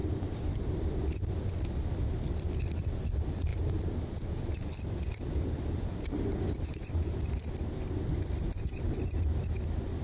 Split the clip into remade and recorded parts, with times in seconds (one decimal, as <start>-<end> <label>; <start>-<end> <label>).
0.0-1.0 remade; 1.0-10.0 recorded